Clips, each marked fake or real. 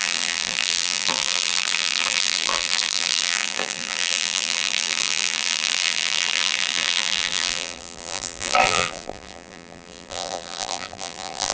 fake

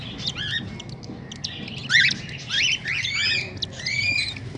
real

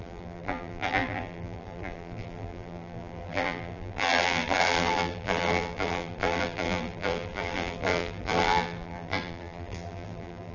fake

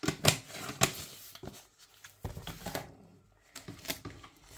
real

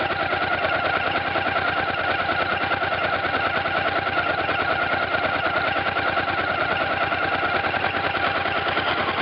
real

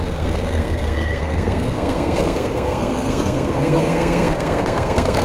fake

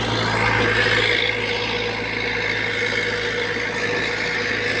real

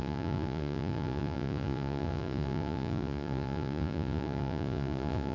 fake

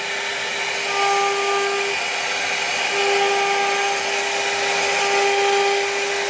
real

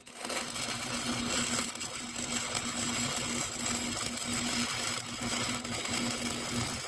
real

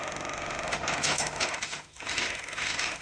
fake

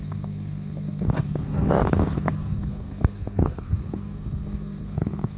fake